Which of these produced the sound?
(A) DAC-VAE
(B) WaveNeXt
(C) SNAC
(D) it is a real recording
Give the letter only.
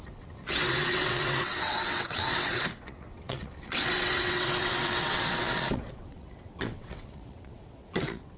B